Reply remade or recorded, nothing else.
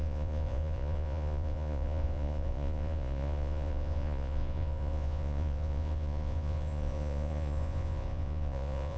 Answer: remade